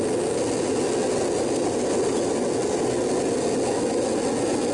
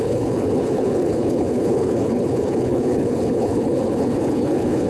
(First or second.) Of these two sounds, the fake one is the second